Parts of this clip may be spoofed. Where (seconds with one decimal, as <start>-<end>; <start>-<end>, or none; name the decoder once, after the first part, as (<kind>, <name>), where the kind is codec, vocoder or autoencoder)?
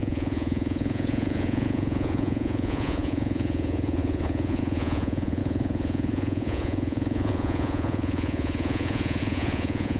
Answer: 0.0-10.0 (vocoder, Vocos)